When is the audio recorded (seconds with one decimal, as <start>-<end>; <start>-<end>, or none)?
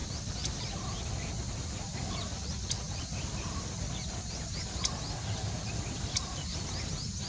none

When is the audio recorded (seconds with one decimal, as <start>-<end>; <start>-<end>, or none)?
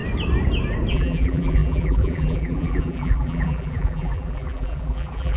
0.0-0.9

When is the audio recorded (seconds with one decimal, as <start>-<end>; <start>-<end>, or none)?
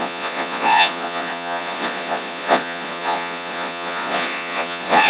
none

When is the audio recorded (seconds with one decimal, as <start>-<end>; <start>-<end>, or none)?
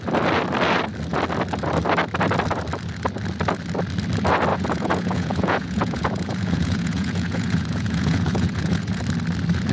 0.0-4.5; 9.0-9.7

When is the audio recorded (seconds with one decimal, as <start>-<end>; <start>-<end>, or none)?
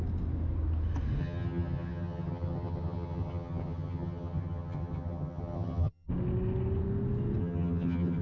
0.0-1.2; 6.1-7.4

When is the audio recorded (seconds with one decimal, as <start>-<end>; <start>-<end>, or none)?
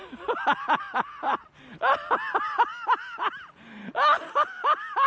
0.0-5.1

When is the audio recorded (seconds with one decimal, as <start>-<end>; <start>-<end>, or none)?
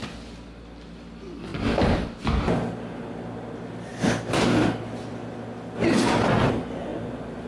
0.0-7.5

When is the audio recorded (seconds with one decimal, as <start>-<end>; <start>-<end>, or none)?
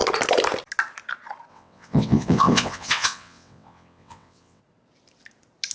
0.0-1.5; 4.6-5.7